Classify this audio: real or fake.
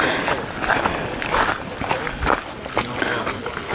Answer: real